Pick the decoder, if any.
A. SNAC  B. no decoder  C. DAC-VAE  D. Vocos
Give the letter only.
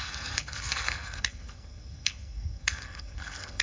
A